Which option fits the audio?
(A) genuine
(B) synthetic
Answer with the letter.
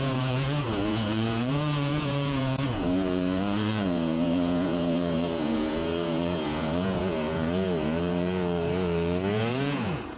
B